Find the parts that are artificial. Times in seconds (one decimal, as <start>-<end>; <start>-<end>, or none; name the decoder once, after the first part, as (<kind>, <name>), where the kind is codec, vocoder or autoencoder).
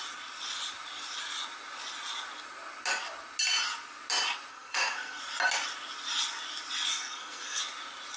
4.5-5.2 (codec, SNAC); 6.9-7.6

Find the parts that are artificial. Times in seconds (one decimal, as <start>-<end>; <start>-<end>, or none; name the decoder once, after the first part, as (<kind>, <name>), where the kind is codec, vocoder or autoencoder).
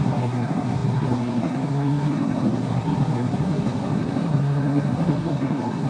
0.0-5.9 (codec, SNAC)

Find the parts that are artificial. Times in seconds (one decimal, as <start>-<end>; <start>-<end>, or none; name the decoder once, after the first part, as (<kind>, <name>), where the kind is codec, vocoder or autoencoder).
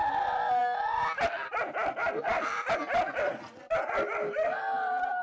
none